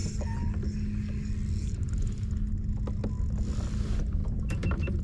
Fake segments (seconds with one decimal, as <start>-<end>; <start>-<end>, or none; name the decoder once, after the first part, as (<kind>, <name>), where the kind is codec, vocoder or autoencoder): 4.2-5.0 (vocoder, BigVGAN v2)